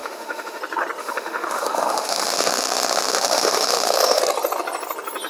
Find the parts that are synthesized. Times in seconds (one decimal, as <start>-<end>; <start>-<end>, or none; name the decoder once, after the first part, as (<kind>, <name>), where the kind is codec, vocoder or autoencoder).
0.0-0.6 (autoencoder, DAC-VAE); 1.0-4.2